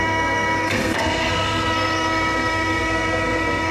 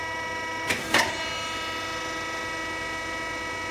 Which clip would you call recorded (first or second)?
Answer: second